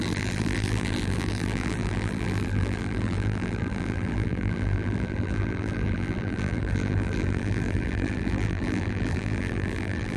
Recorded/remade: remade